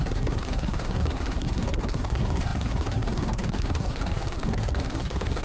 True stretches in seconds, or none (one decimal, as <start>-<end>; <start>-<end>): none